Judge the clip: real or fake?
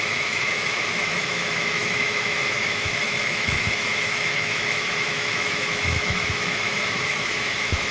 fake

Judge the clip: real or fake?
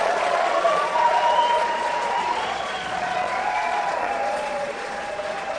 fake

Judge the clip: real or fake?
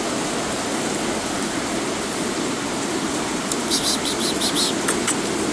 real